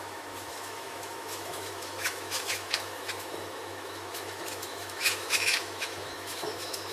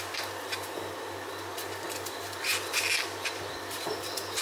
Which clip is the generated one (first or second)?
first